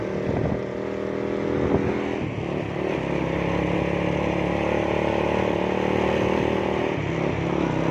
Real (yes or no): yes